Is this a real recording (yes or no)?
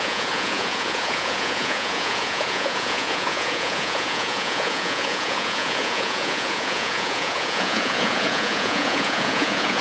no